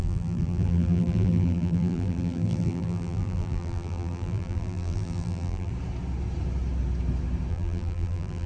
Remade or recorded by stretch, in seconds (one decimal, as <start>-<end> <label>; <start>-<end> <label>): 0.0-5.7 remade; 5.7-7.5 recorded; 7.5-8.5 remade